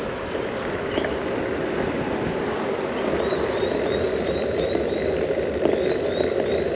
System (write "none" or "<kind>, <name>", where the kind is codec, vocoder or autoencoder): none